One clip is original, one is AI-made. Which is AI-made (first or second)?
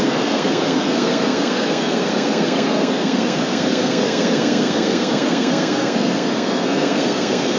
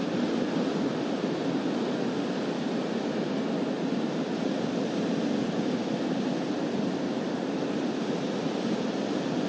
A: first